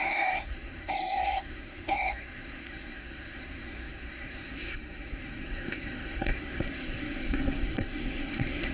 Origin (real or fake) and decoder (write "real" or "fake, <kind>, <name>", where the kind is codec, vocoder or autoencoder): fake, codec, SNAC